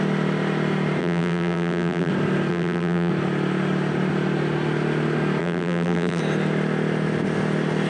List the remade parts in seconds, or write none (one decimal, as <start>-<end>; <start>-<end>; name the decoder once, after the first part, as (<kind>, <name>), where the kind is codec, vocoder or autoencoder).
1.0-2.1 (vocoder, BigVGAN v2); 2.5-3.1; 5.4-6.2